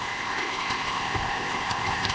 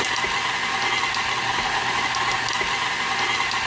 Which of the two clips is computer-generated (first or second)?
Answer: first